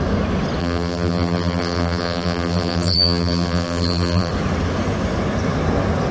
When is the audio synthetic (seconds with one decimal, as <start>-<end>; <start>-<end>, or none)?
0.6-4.3